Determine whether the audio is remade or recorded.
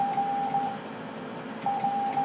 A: recorded